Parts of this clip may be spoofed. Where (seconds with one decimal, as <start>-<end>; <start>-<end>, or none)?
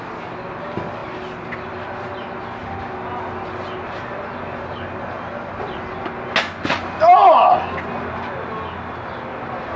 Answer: none